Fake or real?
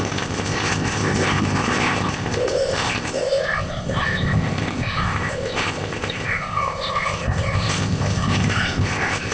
fake